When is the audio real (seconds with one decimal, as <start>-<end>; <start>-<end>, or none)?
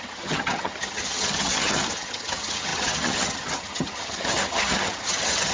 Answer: none